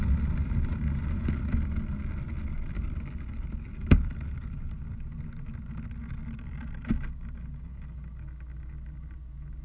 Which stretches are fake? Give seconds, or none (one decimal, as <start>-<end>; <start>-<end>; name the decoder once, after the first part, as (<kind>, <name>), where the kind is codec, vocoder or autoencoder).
none